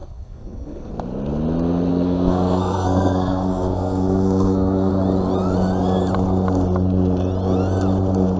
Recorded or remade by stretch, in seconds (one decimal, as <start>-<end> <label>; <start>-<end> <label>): 0.0-0.9 remade; 0.9-1.9 recorded; 1.9-4.9 remade; 4.9-8.4 recorded